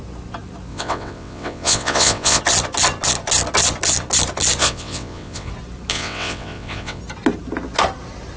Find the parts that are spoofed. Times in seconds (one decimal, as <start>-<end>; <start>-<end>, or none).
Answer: 0.7-2.4; 4.6-5.5; 5.9-7.0